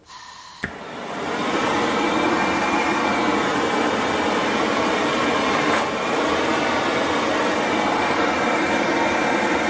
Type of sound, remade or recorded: recorded